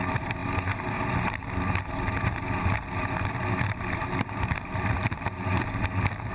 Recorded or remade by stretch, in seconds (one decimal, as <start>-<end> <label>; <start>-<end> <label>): 0.0-0.4 remade; 0.4-4.2 recorded; 4.2-5.0 remade; 5.0-5.7 recorded; 5.7-6.3 remade